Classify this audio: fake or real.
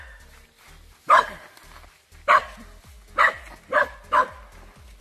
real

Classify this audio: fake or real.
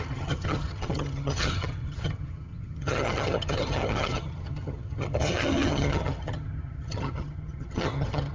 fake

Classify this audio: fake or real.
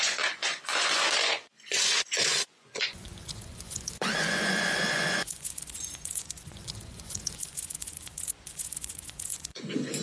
fake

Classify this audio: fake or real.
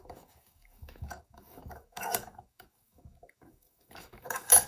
fake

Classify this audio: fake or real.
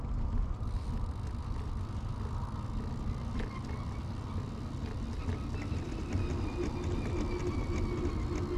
real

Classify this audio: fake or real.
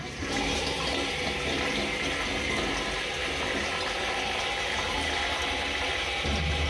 real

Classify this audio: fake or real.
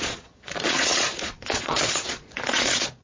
fake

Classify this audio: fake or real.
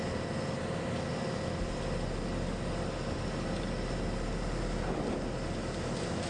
real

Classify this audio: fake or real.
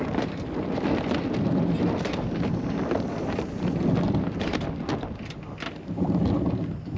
real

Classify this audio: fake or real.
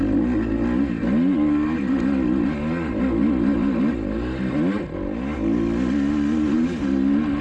real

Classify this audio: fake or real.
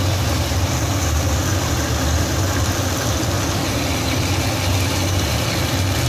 real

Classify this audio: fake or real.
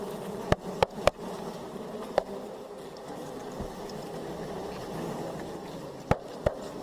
real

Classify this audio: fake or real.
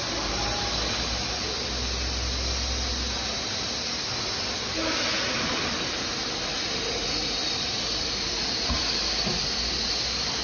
real